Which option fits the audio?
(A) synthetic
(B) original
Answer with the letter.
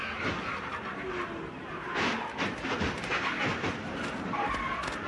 B